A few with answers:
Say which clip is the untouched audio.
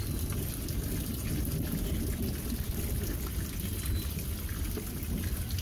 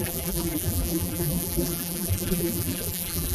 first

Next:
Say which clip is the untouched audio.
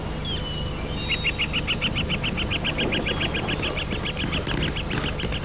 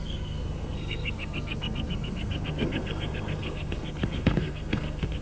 first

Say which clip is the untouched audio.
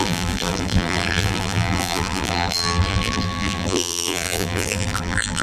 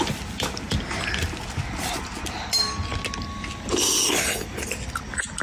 second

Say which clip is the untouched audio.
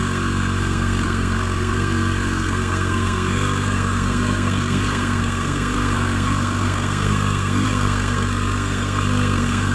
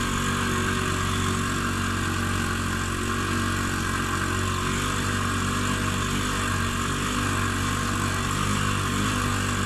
second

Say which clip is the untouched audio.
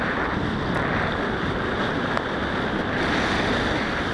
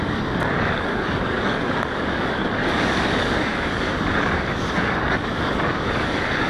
first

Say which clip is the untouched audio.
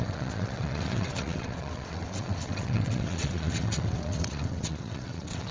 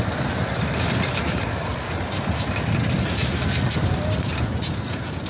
second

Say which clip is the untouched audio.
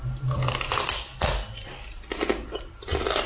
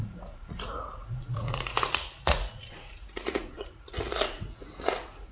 first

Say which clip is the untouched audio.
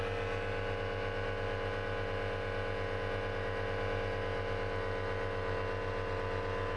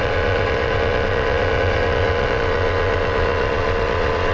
first